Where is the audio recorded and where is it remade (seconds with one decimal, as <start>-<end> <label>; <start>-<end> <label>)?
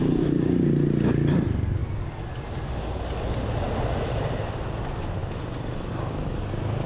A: 0.0-6.9 recorded